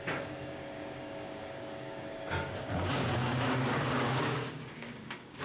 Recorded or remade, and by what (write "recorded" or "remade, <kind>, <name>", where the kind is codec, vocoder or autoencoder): remade, codec, DAC